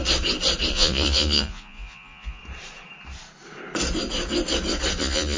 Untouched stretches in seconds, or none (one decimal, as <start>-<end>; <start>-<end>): 0.0-0.7; 2.4-5.0